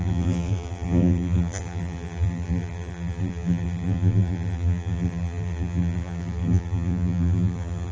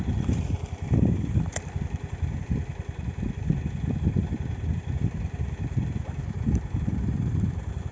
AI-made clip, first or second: first